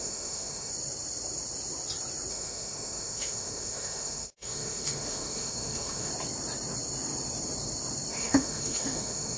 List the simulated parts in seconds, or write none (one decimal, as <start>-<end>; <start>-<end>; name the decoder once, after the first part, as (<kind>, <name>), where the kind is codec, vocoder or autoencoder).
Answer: 0.0-0.7 (autoencoder, DAC-VAE); 2.3-6.1; 8.1-9.4